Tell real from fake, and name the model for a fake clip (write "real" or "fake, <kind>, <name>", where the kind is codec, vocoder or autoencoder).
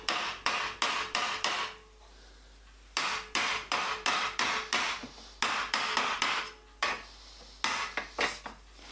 real